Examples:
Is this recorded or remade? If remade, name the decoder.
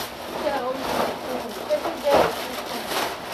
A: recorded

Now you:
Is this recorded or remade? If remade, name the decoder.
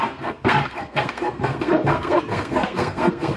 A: remade, codec, SNAC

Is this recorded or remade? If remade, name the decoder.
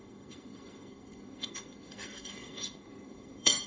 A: remade, codec, SNAC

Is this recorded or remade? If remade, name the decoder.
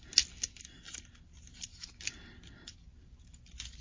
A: recorded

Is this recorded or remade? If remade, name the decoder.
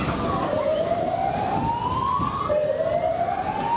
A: recorded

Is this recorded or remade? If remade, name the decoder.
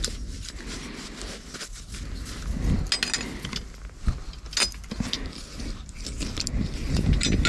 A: recorded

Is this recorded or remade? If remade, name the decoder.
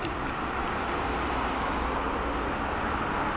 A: recorded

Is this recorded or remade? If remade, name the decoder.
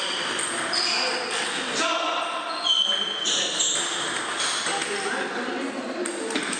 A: recorded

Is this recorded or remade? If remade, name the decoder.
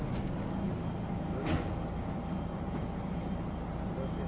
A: recorded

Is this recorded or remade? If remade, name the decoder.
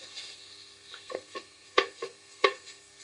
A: remade, codec, SNAC